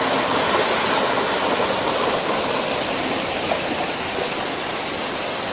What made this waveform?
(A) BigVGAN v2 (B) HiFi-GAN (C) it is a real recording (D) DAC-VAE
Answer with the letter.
C